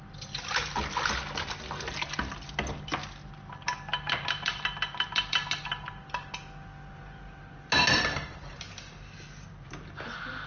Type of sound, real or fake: real